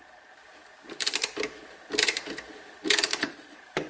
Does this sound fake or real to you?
fake